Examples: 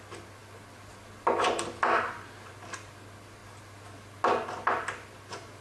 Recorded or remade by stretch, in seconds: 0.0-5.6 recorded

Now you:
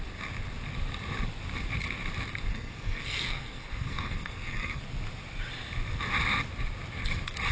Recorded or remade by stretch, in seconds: 0.0-2.5 recorded; 2.5-4.8 remade; 4.8-7.5 recorded

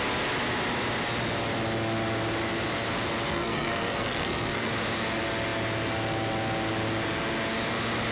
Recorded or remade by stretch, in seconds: 0.0-3.3 recorded; 3.3-4.7 remade; 4.7-8.1 recorded

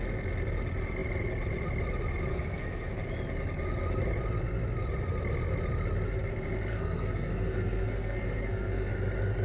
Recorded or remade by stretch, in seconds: 0.0-2.3 recorded; 2.3-2.9 remade; 2.9-6.7 recorded; 6.7-8.9 remade; 8.9-9.4 recorded

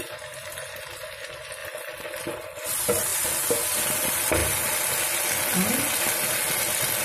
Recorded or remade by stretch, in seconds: 0.0-7.0 recorded

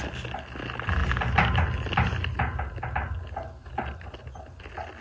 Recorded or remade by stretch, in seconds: 0.0-5.0 recorded